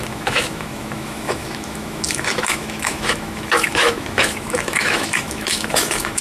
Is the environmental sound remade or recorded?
remade